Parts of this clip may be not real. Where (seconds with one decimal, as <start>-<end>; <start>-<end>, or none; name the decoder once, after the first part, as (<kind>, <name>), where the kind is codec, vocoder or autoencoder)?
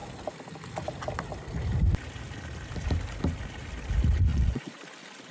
4.3-4.8 (vocoder, Vocos)